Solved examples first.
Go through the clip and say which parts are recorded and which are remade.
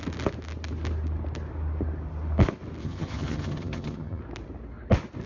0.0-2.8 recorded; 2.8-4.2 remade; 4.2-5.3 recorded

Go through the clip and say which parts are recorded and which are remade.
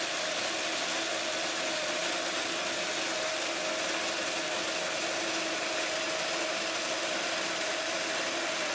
0.0-8.7 recorded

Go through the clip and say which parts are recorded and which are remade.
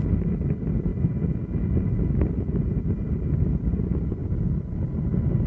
0.0-5.5 recorded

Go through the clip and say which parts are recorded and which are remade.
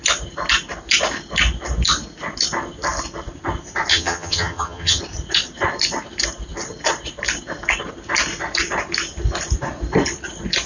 0.0-3.9 recorded; 3.9-5.0 remade; 5.0-10.7 recorded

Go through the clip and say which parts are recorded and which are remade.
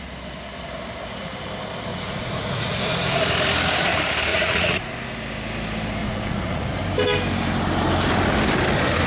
0.0-1.9 recorded; 1.9-3.2 remade; 3.2-4.3 recorded; 4.3-5.0 remade; 5.0-6.0 recorded; 6.0-6.8 remade; 6.8-9.1 recorded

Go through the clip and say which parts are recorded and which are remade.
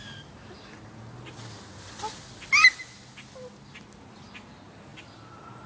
0.0-5.7 recorded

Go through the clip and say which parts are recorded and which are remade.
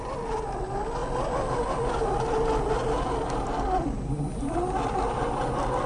0.0-5.9 recorded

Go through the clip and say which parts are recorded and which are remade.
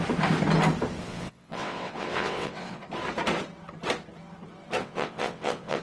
0.0-1.0 recorded; 1.0-2.8 remade; 2.8-4.8 recorded; 4.8-5.8 remade